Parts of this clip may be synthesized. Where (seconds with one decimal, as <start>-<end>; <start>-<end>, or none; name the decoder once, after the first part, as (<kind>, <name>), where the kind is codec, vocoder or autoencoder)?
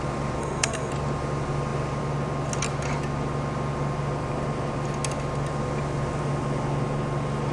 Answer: 0.4-0.9 (codec, SNAC)